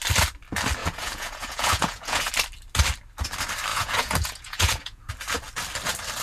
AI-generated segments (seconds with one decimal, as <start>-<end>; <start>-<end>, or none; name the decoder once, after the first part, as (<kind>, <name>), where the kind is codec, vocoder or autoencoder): 0.8-2.3 (vocoder, Vocos); 3.7-5.1